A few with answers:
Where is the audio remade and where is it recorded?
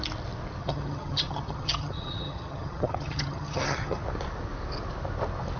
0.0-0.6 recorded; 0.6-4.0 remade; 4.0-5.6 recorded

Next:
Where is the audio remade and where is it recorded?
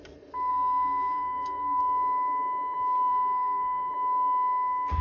0.0-0.5 recorded; 0.5-1.8 remade; 1.8-3.1 recorded; 3.1-3.9 remade; 3.9-5.0 recorded